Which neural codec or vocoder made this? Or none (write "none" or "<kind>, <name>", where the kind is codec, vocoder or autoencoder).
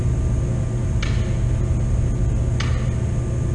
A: none